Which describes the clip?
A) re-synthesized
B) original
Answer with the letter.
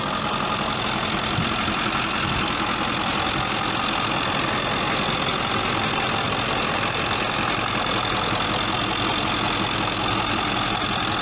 B